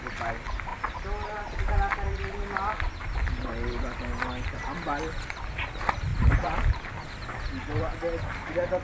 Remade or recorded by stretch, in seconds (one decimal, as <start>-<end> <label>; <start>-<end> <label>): 0.0-6.1 recorded; 6.1-6.9 remade; 6.9-8.8 recorded